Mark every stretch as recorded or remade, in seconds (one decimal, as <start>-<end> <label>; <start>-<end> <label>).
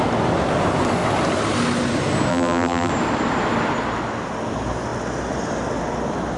0.0-2.3 recorded; 2.3-2.9 remade; 2.9-6.4 recorded